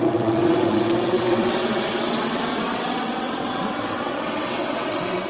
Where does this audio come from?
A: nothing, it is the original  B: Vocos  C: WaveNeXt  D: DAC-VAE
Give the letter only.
C